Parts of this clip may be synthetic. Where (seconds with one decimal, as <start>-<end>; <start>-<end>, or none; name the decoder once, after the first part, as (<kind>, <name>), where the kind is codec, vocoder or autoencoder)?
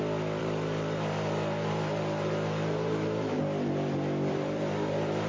0.4-3.4 (vocoder, BigVGAN v2); 4.3-5.3